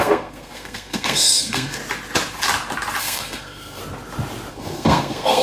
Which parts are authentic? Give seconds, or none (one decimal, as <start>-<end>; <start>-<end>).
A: 1.8-3.0; 3.8-4.5